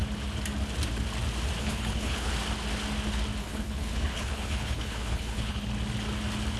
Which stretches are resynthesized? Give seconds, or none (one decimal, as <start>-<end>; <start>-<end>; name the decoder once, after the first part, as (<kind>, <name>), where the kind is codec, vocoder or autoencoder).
1.6-2.3 (codec, HILCodec); 3.4-5.7

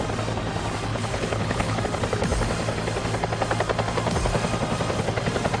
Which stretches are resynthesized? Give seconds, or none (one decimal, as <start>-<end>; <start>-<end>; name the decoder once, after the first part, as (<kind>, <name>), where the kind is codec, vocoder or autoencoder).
0.9-1.8 (codec, HILCodec)

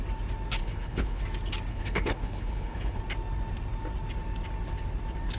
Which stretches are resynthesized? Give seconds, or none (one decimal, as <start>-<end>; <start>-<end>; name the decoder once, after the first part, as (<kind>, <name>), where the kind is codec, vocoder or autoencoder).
0.6-1.2 (codec, HILCodec); 1.7-3.0

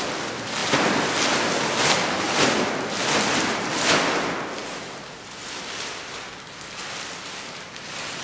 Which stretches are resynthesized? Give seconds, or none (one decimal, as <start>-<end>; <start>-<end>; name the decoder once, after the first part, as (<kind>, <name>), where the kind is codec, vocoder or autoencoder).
none